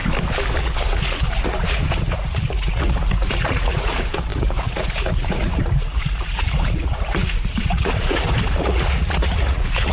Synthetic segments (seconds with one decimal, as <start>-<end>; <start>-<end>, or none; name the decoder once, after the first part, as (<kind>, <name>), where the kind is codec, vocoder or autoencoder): 0.6-9.9 (vocoder, Vocos)